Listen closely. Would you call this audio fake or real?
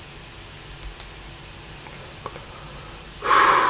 real